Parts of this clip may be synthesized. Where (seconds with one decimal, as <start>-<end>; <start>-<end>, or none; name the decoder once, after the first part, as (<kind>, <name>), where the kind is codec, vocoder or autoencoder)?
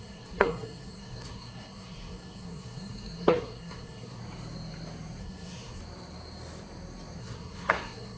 0.0-4.2 (codec, SNAC); 5.2-5.8; 7.2-8.2